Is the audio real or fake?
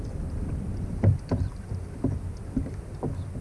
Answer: real